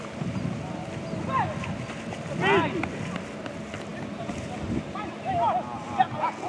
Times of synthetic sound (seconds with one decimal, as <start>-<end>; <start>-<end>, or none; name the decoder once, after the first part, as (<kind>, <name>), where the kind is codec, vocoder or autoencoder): none